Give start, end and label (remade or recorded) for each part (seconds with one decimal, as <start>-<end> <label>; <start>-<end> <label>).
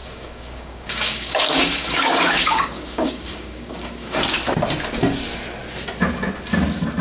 0.0-4.2 remade; 4.2-7.0 recorded